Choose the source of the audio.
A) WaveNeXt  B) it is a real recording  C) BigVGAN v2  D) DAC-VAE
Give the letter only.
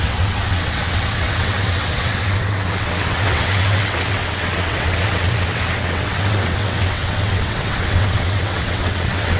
A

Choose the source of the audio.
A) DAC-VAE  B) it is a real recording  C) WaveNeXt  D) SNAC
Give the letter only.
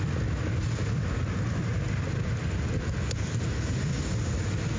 B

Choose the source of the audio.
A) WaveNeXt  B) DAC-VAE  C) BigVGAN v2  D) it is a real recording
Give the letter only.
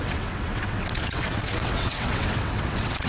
A